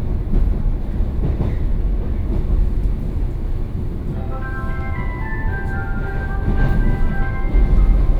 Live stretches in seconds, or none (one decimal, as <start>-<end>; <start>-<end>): 0.0-8.2